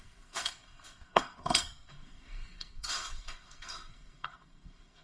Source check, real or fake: fake